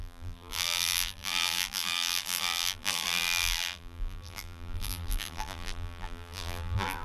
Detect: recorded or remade remade